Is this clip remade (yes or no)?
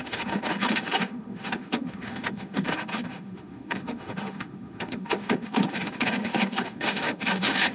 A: yes